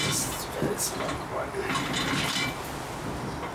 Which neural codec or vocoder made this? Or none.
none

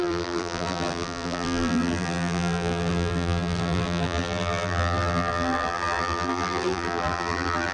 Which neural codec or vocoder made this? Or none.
vocoder, BigVGAN v2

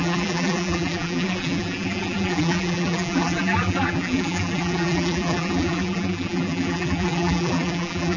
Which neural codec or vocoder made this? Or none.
vocoder, BigVGAN v2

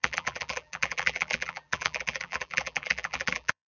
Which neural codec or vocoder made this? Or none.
vocoder, BigVGAN v2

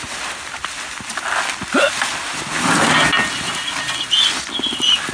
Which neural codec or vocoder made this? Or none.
none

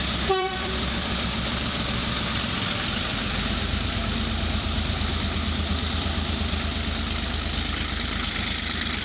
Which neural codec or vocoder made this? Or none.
vocoder, BigVGAN v2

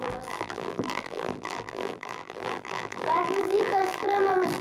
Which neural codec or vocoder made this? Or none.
vocoder, BigVGAN v2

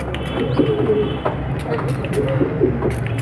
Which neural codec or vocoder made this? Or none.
none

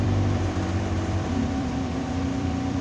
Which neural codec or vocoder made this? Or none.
vocoder, BigVGAN v2